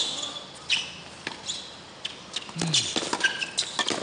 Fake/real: real